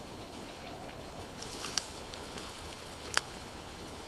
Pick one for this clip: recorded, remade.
remade